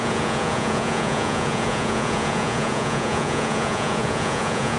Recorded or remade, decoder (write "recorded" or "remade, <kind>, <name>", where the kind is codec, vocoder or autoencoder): remade, vocoder, Vocos